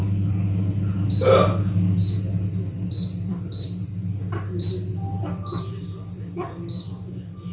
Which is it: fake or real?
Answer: real